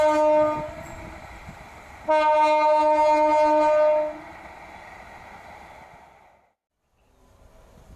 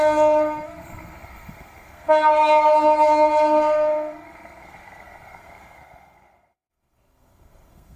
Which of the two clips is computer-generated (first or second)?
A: second